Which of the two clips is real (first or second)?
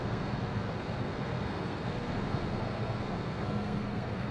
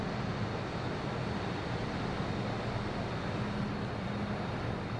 second